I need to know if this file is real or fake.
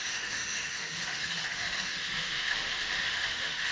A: fake